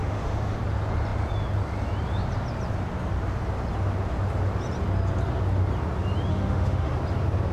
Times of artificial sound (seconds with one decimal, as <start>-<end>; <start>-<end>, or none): 0.0-0.6; 6.3-6.9